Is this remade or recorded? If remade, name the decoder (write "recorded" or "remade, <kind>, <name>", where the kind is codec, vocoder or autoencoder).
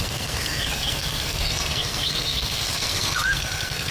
remade, codec, SNAC